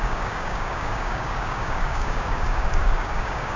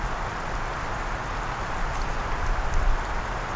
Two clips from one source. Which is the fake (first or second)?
first